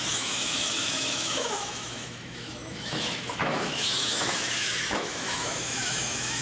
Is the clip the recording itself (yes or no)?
no